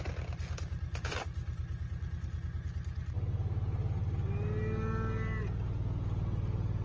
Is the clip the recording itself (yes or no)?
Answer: yes